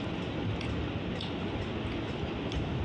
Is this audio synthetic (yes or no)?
no